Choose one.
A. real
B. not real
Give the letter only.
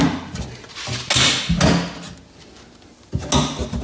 A